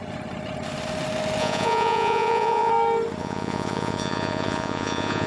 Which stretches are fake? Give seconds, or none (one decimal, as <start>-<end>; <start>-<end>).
1.4-2.7; 3.2-5.3